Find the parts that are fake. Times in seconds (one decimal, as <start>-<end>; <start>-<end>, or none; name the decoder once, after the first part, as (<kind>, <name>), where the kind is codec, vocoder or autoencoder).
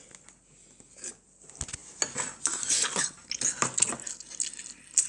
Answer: none